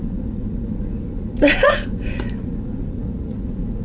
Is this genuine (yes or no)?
no